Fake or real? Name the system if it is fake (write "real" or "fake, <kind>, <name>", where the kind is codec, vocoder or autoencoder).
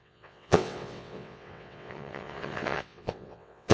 fake, vocoder, WaveNeXt